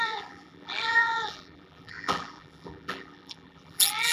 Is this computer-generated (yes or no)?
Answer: yes